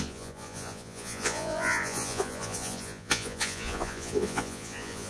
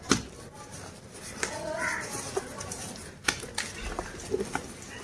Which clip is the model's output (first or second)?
first